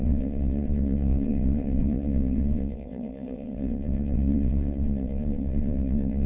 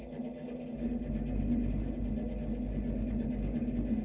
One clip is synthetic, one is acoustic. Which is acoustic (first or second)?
second